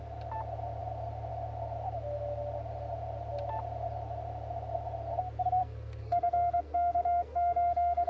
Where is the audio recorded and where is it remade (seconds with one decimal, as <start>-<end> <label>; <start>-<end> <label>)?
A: 0.0-5.6 recorded; 5.6-8.1 remade